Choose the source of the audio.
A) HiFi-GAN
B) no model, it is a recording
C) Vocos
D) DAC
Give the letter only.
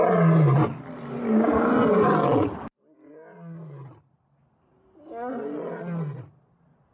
B